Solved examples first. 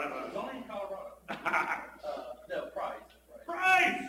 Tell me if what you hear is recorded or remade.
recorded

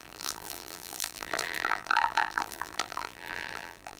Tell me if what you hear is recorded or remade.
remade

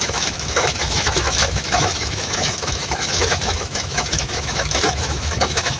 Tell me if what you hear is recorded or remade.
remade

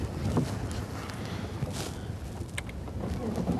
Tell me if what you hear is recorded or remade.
recorded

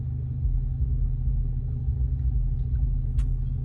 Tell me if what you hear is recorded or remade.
recorded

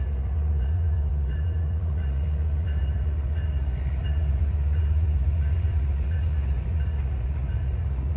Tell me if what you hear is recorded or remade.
remade